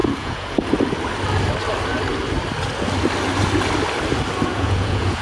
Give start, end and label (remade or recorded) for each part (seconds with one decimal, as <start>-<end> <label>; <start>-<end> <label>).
0.0-0.7 remade; 0.7-4.5 recorded; 4.5-5.2 remade